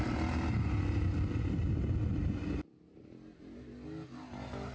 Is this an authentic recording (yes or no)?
yes